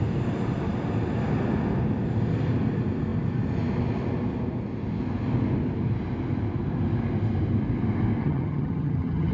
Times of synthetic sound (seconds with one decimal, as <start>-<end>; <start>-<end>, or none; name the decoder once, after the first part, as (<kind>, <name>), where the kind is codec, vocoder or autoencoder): 8.2-9.3 (vocoder, HiFi-GAN)